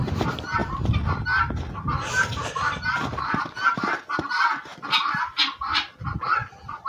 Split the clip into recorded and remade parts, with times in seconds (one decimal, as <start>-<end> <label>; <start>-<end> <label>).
0.0-6.9 recorded